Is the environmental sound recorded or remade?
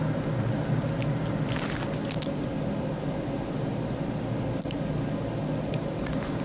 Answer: recorded